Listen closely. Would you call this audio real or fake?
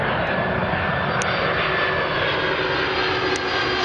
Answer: real